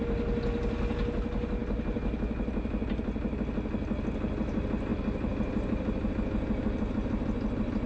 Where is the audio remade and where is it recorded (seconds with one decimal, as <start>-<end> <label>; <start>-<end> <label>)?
0.0-4.9 recorded; 4.9-6.1 remade; 6.1-7.9 recorded